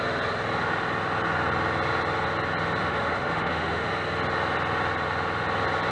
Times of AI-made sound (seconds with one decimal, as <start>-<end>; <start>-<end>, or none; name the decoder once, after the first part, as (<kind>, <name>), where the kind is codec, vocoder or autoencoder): 2.8-3.9 (autoencoder, DAC-VAE)